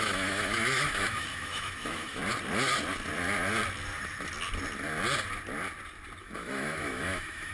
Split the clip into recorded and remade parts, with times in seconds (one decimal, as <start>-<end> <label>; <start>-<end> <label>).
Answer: 0.0-2.2 remade; 2.2-6.2 recorded; 6.2-7.5 remade